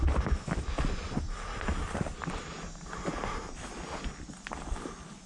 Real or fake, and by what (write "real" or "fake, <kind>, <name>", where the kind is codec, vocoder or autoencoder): real